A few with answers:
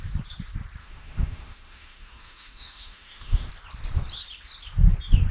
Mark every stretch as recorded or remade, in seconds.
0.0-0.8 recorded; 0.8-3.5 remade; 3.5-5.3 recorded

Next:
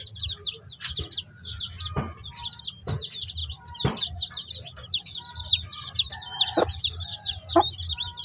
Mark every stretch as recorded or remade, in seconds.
0.0-8.2 recorded

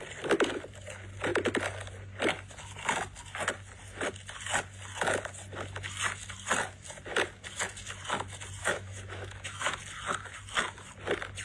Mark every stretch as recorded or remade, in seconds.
0.0-8.6 recorded; 8.6-9.8 remade; 9.8-11.4 recorded

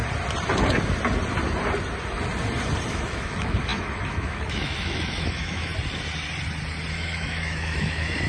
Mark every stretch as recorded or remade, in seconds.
0.0-2.9 recorded; 2.9-5.7 remade; 5.7-6.9 recorded; 6.9-8.3 remade

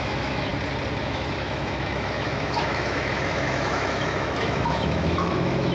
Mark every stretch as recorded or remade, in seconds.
0.0-0.5 remade; 0.5-1.0 recorded; 1.0-5.7 remade